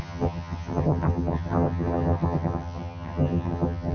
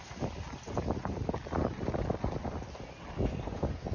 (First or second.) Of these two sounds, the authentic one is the second